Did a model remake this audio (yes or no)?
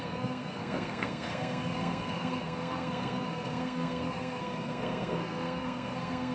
yes